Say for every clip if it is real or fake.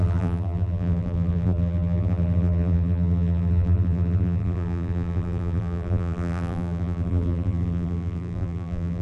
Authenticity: fake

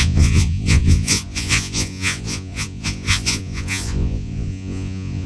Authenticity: fake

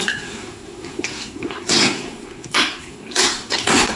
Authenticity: fake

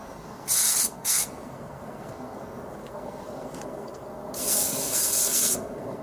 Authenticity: fake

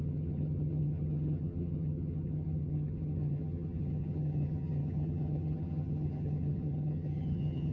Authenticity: fake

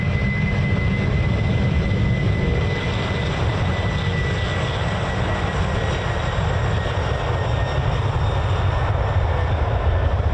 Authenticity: real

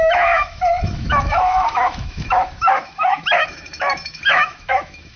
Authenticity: fake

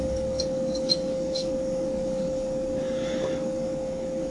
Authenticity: fake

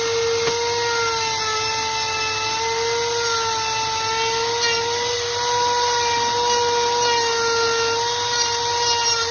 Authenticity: real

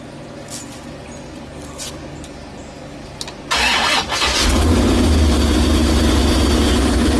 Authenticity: real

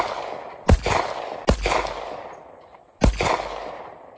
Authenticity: real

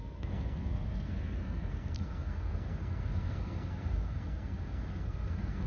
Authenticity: fake